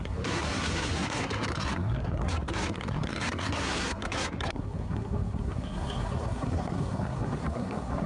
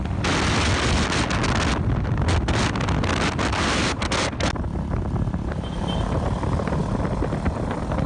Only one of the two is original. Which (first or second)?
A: second